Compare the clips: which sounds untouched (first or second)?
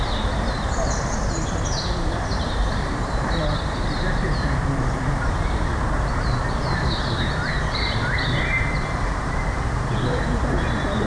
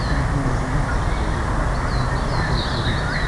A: second